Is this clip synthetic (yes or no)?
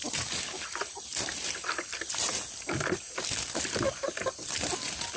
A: no